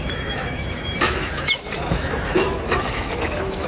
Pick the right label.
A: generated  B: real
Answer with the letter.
A